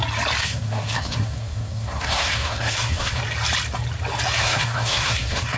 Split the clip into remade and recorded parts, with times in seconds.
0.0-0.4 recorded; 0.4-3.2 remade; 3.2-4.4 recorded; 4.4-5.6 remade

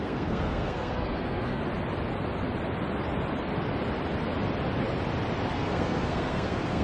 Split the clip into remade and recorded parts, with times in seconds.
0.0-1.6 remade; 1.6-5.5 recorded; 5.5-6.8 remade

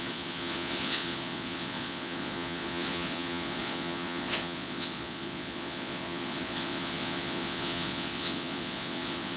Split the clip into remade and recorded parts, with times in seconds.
0.0-9.4 remade

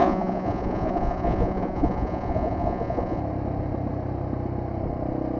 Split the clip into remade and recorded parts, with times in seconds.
0.0-3.2 remade; 3.2-5.4 recorded

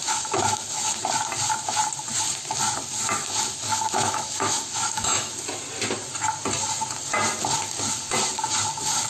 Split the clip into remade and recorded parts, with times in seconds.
0.0-1.0 remade; 1.0-3.2 recorded; 3.2-5.3 remade; 5.3-9.1 recorded

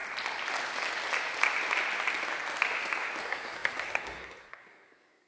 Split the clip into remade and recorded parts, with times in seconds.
0.0-3.2 recorded; 3.2-5.3 remade

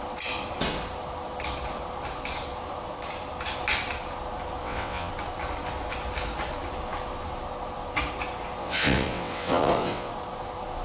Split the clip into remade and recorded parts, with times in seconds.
0.0-4.6 recorded; 4.6-5.1 remade; 5.1-8.6 recorded; 8.6-10.1 remade; 10.1-10.8 recorded